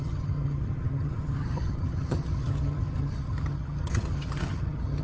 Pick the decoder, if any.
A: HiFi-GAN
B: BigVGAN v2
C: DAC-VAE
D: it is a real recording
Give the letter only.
A